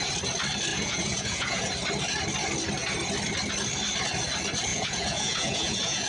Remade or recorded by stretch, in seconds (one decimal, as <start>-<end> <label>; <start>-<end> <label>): 0.0-0.7 recorded; 0.7-1.7 remade; 1.7-4.7 recorded; 4.7-6.1 remade